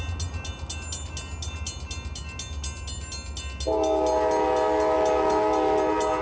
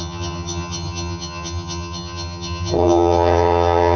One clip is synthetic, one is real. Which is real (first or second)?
first